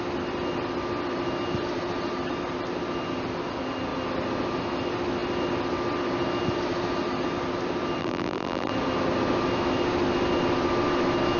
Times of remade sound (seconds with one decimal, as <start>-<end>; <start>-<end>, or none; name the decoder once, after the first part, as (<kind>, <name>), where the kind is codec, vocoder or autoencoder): 8.0-8.7 (vocoder, BigVGAN v2)